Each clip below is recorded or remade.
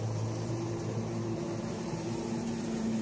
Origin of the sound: remade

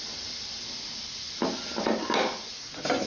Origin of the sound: recorded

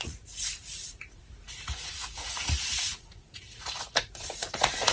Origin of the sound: remade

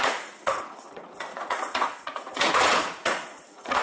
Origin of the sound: remade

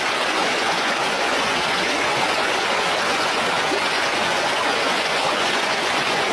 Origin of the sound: remade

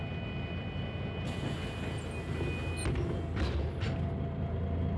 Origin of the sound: recorded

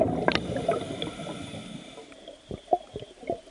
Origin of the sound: recorded